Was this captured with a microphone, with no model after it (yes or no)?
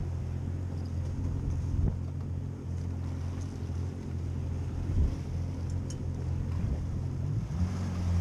yes